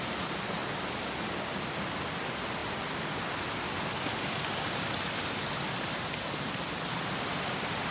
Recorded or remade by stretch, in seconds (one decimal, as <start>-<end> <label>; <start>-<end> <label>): 0.0-7.9 recorded